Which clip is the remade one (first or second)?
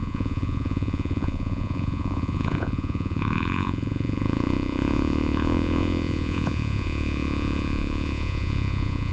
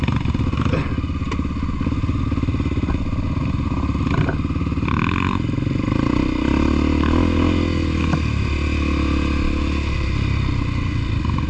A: first